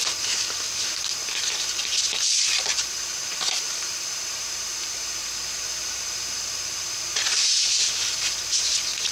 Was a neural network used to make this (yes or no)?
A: yes